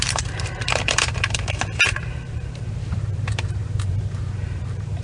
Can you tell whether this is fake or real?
fake